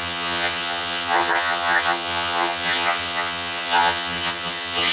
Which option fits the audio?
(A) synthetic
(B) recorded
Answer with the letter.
A